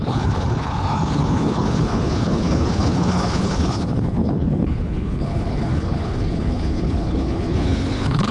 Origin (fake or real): fake